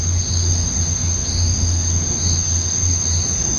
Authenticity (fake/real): fake